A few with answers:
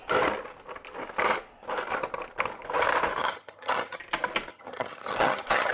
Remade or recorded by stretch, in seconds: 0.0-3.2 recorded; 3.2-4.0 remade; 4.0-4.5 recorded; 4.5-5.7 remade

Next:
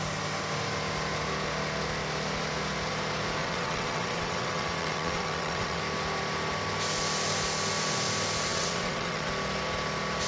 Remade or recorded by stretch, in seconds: 0.0-3.4 recorded; 3.4-5.8 remade; 5.8-8.5 recorded; 8.5-9.3 remade; 9.3-10.3 recorded

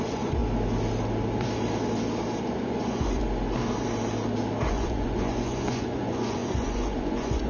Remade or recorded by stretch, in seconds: 0.0-0.4 remade; 0.4-2.4 recorded; 2.4-3.2 remade; 3.2-4.7 recorded; 4.7-7.5 remade

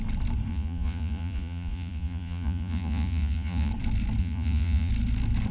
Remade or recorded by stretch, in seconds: 0.0-0.5 recorded; 0.5-3.7 remade; 3.7-4.2 recorded; 4.2-4.9 remade; 4.9-5.5 recorded

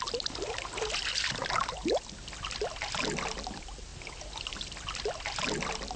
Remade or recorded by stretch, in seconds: 0.0-6.0 recorded